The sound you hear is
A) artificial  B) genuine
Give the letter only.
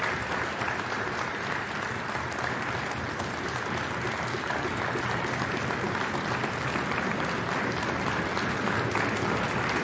B